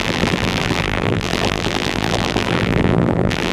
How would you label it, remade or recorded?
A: remade